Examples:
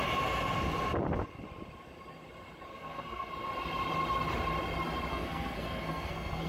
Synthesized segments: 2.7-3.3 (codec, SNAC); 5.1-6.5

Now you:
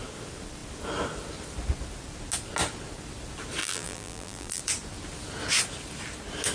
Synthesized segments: 3.6-4.6 (vocoder, BigVGAN v2)

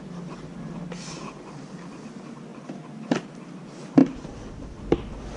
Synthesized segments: none

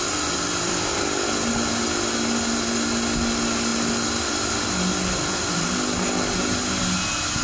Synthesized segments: none